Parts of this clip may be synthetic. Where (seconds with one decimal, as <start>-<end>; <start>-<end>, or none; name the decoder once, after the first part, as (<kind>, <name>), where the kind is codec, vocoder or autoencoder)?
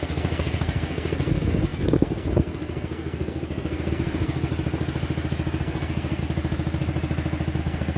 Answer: 0.0-4.5 (codec, SNAC); 5.6-6.2; 7.6-8.0